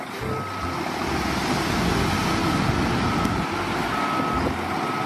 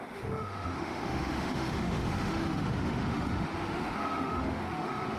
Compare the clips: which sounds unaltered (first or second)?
first